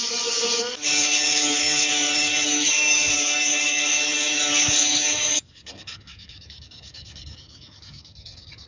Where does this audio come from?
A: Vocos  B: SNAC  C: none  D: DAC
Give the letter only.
D